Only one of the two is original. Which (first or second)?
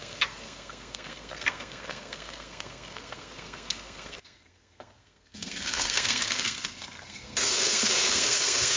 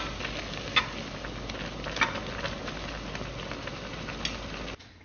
second